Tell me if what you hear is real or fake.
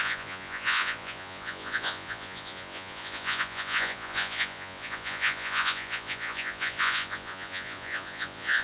fake